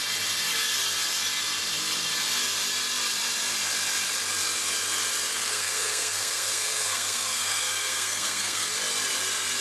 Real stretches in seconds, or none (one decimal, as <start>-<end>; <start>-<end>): 0.0-5.3; 8.7-9.6